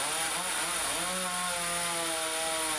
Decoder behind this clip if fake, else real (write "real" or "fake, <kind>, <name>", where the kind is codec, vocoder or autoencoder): real